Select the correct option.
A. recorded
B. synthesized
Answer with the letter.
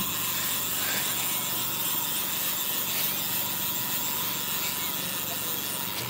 A